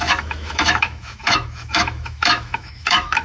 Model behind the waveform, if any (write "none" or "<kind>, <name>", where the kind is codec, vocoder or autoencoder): autoencoder, DAC-VAE